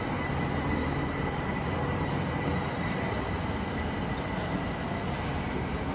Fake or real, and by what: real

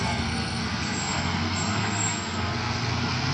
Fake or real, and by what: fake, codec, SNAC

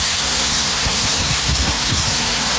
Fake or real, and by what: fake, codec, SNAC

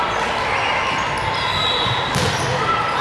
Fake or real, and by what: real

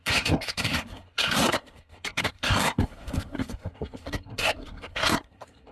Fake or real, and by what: fake, codec, SNAC